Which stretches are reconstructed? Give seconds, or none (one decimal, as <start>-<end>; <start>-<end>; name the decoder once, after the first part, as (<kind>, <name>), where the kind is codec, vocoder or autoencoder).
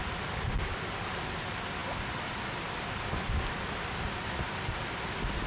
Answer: none